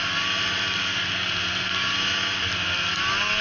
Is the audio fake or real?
real